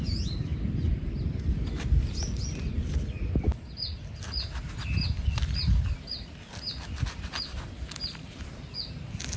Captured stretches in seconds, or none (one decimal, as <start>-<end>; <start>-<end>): 0.0-9.4